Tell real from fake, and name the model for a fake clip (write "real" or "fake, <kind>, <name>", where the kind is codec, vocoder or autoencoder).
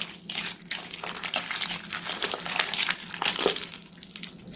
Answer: real